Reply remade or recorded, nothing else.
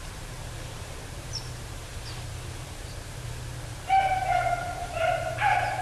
remade